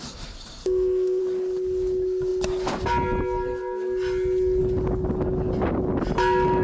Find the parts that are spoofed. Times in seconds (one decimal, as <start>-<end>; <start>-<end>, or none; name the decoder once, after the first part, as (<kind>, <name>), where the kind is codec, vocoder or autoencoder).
0.6-1.2 (codec, SNAC)